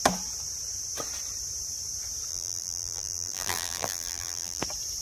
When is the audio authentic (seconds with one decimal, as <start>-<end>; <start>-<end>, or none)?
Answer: 0.0-2.3; 4.6-5.0